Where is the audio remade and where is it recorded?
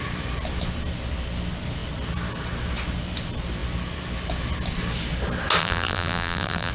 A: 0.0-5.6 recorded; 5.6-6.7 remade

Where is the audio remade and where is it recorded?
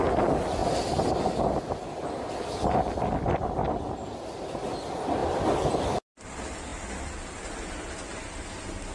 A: 0.0-5.2 recorded; 5.2-6.1 remade; 6.1-8.9 recorded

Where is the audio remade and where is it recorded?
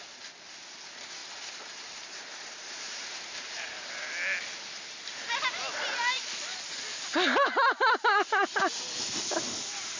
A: 0.0-1.2 recorded; 1.2-4.1 remade; 4.1-10.0 recorded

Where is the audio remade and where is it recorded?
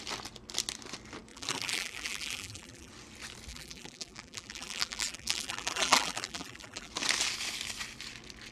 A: 0.0-1.3 recorded; 1.3-2.9 remade; 2.9-3.5 recorded; 3.5-6.9 remade; 6.9-8.5 recorded